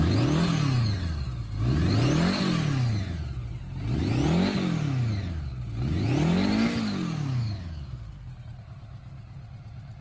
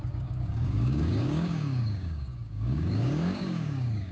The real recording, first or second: first